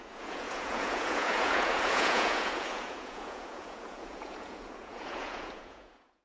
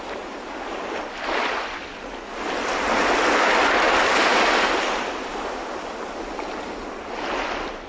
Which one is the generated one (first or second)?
first